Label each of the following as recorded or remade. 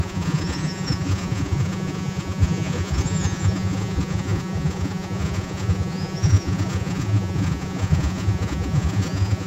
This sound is remade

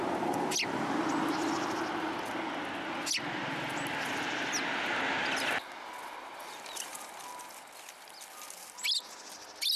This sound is recorded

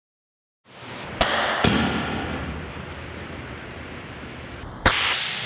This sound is recorded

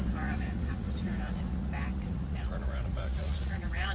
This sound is remade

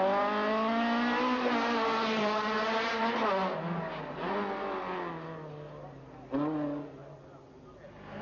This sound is recorded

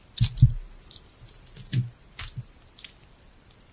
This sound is recorded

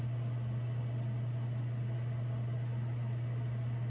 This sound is recorded